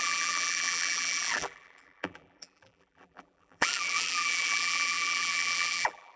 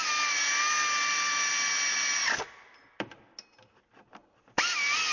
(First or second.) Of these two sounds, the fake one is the first